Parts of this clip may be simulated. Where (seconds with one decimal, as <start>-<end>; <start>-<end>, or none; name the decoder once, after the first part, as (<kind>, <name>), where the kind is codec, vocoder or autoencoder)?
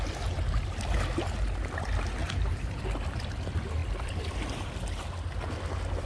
2.2-2.8 (vocoder, BigVGAN v2)